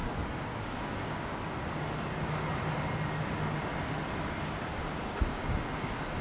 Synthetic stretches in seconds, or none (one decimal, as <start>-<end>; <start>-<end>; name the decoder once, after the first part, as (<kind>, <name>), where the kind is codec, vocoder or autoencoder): 0.6-1.3 (codec, DAC); 5.0-6.2